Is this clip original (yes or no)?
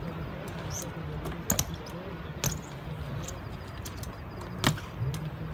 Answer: yes